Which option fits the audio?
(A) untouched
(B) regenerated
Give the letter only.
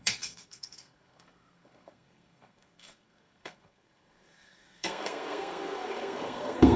B